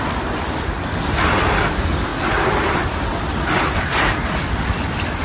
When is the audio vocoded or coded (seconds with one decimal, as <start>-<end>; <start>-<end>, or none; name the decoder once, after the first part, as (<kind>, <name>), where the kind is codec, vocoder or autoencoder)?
none